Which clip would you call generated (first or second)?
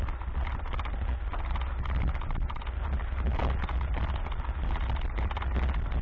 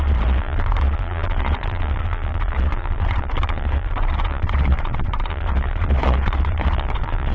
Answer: second